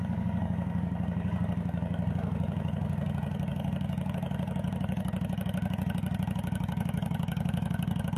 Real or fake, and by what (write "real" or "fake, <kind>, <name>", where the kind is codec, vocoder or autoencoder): fake, codec, DAC